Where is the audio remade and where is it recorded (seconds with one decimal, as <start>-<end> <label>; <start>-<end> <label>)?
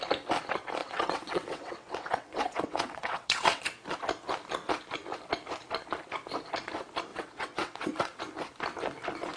0.0-0.8 recorded; 0.8-3.6 remade; 3.6-7.1 recorded; 7.1-8.2 remade; 8.2-9.4 recorded